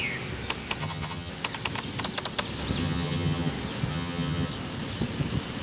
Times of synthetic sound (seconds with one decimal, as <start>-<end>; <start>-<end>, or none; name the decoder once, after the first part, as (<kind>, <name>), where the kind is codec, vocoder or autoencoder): 0.8-1.3 (vocoder, HiFi-GAN); 2.8-3.5; 3.9-4.5